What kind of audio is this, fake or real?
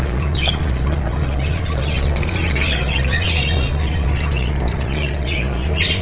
fake